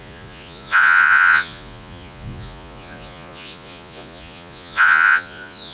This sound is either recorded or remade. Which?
remade